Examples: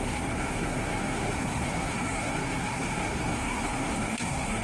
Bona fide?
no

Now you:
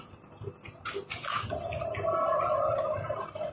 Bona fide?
yes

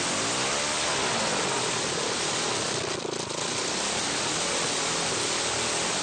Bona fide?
yes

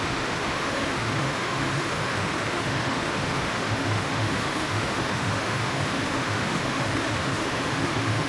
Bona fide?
no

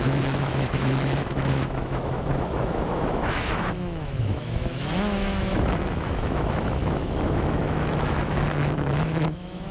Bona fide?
no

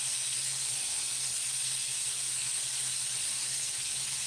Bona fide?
no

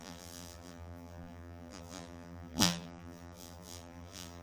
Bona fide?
no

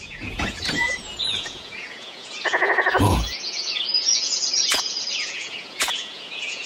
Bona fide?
no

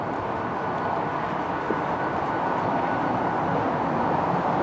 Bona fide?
yes